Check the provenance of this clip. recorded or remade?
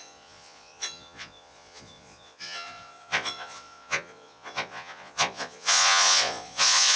remade